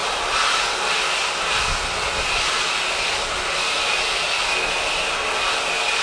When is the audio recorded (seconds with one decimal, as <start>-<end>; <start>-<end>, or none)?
0.0-6.0